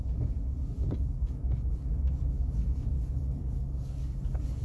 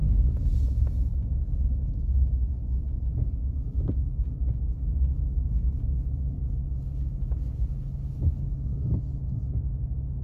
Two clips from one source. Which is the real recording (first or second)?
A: second